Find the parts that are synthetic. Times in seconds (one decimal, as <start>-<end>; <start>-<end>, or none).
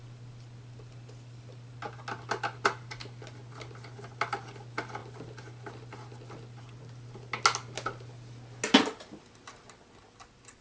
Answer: none